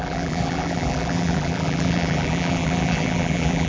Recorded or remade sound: remade